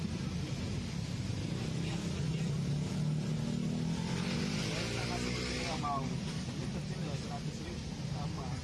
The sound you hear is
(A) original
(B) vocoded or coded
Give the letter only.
A